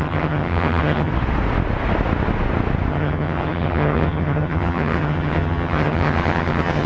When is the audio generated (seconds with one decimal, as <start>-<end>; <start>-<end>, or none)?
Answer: 0.0-1.1; 2.9-6.9

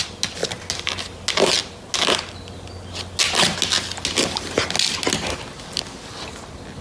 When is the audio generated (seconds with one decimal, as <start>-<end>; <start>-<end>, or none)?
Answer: none

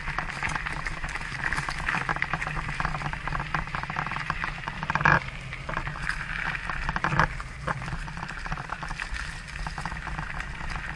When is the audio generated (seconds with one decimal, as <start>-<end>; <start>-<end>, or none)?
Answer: 7.1-9.3

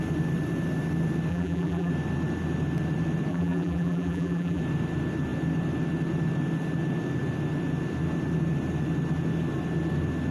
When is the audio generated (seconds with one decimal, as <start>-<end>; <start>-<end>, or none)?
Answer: 1.3-1.9; 3.3-4.6